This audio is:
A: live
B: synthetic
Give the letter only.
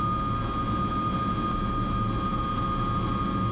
A